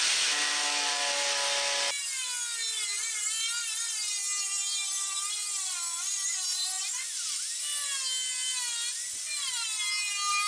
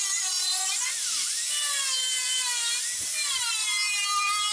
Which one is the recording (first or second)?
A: first